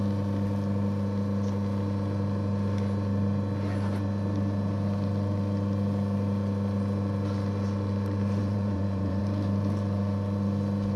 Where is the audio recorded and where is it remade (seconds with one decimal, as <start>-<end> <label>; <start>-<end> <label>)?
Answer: 0.0-8.4 recorded; 8.4-9.2 remade; 9.2-11.0 recorded